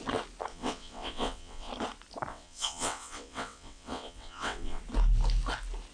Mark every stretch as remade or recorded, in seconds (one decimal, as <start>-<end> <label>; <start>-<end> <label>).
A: 0.0-0.5 recorded; 0.5-1.7 remade; 1.7-2.3 recorded; 2.3-4.8 remade; 4.8-5.9 recorded